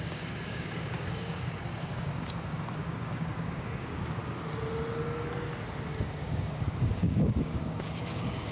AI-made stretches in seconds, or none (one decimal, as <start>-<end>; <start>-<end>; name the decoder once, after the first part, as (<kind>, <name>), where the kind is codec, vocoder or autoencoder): 0.0-4.2 (codec, DAC); 5.8-8.5